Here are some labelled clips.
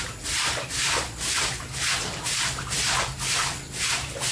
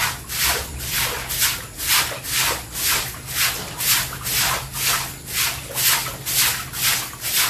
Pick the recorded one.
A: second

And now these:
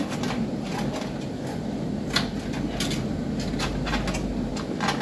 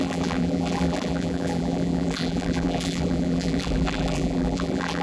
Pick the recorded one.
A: first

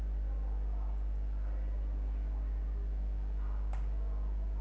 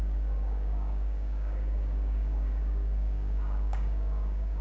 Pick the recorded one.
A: first